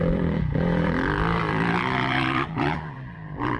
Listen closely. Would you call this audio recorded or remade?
remade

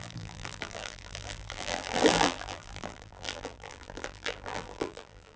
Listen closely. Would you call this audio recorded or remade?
remade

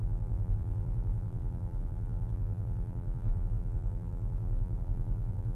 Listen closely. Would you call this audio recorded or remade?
remade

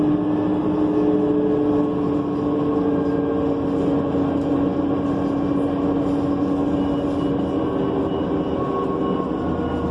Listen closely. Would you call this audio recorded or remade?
recorded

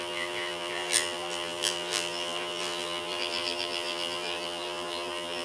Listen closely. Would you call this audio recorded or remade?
remade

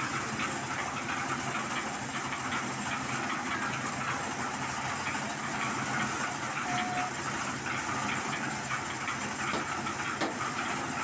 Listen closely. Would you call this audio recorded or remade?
recorded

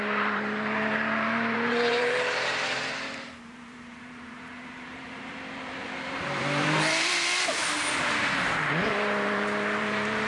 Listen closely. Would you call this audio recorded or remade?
remade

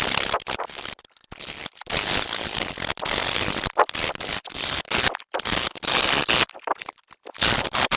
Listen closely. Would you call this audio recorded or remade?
recorded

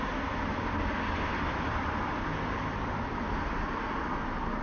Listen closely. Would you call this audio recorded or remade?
remade